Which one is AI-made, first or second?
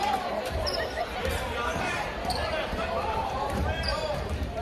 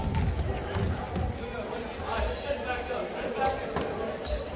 first